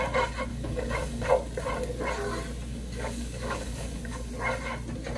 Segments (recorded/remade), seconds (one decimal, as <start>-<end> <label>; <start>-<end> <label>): 0.0-0.5 recorded; 0.5-1.3 remade; 1.3-2.7 recorded; 2.7-4.3 remade; 4.3-5.2 recorded